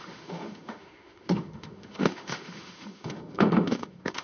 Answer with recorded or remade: remade